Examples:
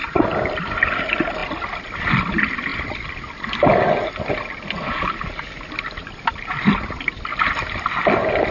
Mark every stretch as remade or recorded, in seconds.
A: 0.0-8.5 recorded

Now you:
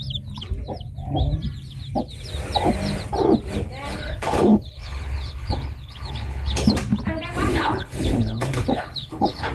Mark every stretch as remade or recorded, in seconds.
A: 0.0-3.9 recorded; 3.9-6.7 remade; 6.7-7.5 recorded; 7.5-9.5 remade

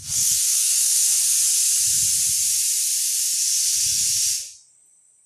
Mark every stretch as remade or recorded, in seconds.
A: 0.0-1.1 remade; 1.1-5.3 recorded

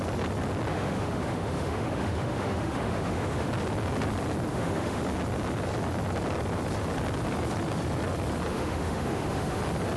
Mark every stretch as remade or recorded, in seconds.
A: 0.0-0.7 recorded; 0.7-3.5 remade; 3.5-4.5 recorded; 4.5-5.0 remade; 5.0-8.5 recorded; 8.5-9.6 remade; 9.6-10.0 recorded

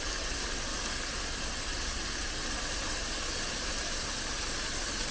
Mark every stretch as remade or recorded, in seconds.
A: 0.0-5.1 recorded